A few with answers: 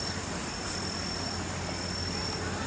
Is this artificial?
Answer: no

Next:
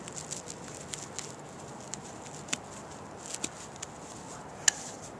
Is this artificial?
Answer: no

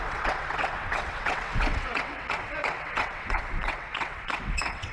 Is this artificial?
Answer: yes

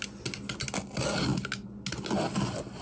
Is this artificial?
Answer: no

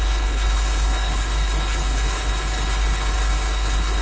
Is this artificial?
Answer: yes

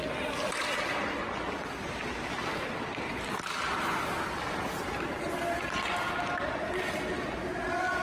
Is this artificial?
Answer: no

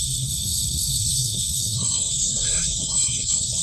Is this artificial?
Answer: yes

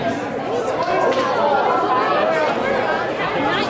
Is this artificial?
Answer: no